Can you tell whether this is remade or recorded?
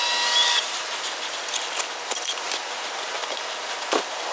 recorded